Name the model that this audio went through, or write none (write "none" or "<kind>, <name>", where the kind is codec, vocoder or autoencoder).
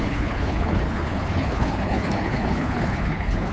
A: codec, HILCodec